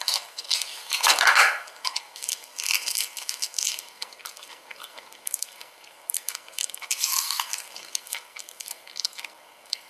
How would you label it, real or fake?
fake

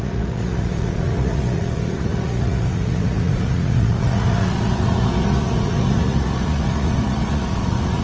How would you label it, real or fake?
fake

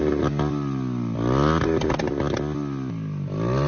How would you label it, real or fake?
real